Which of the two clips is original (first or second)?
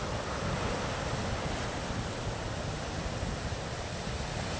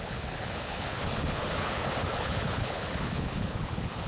first